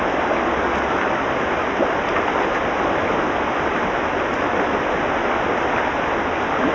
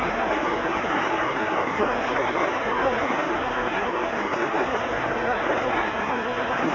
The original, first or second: first